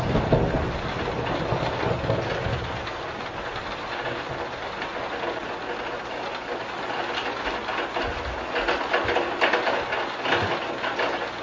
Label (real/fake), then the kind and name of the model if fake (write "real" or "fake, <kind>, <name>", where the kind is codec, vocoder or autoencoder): real